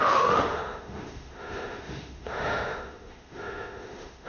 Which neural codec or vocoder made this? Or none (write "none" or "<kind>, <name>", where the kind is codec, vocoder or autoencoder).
autoencoder, DAC-VAE